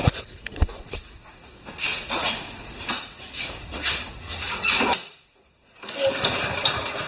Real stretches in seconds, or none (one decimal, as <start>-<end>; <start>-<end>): 1.5-1.9; 5.8-7.1